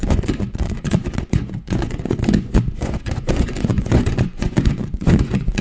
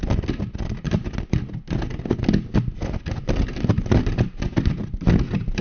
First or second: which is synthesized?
first